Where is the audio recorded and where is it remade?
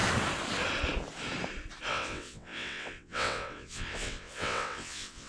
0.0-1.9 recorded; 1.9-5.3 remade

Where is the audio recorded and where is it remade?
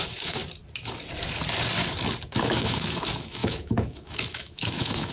0.0-0.4 remade; 0.4-2.4 recorded; 2.4-5.1 remade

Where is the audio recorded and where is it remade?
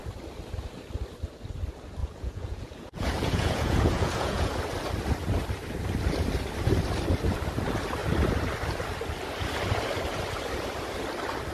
0.0-2.0 recorded; 2.0-4.5 remade; 4.5-11.5 recorded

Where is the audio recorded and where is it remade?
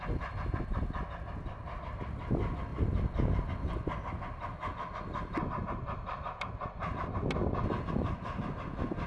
0.0-9.1 recorded